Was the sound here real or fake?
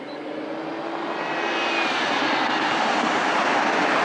real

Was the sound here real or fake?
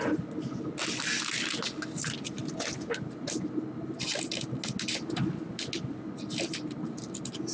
real